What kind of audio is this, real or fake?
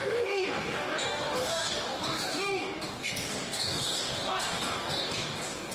fake